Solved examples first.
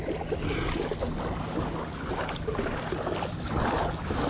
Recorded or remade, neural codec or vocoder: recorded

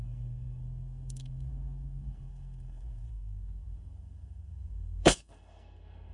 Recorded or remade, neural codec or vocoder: remade, codec, SNAC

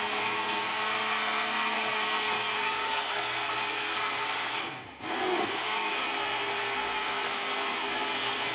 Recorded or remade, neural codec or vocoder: remade, codec, SNAC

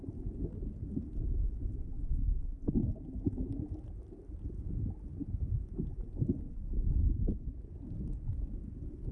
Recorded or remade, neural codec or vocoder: recorded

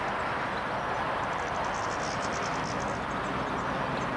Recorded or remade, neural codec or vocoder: recorded